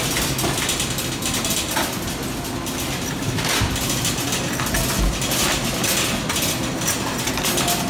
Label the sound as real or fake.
real